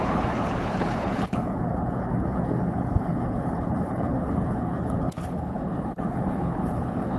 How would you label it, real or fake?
fake